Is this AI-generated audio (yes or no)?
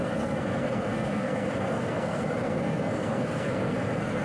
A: yes